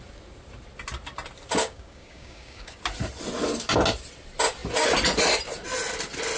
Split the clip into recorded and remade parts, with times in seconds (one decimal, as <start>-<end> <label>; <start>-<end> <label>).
0.0-1.6 recorded; 1.6-2.8 remade; 2.8-6.4 recorded